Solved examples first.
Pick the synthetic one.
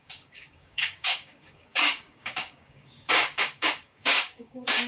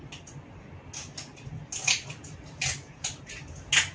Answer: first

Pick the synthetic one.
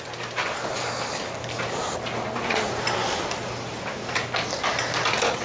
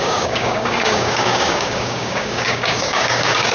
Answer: second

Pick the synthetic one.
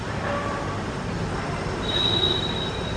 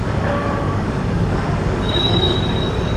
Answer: second